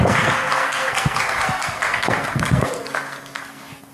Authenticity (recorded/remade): remade